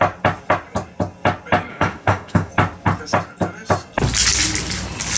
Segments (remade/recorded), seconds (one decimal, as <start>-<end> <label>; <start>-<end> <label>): 0.0-1.7 recorded; 1.7-2.5 remade; 2.5-5.2 recorded